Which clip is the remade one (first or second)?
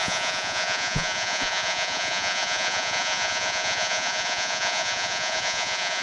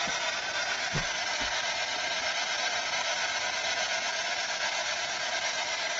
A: first